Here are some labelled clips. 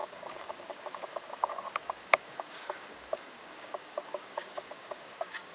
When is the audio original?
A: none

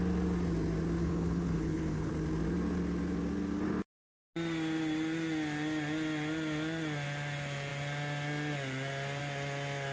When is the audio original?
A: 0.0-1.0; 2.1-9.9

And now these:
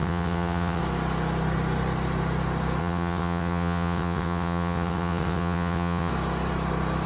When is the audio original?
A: 0.8-2.8; 6.1-7.1

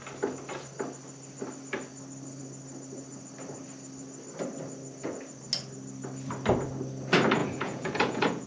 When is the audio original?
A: 0.0-7.4